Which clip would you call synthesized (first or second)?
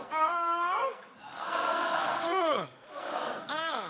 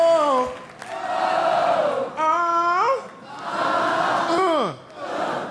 first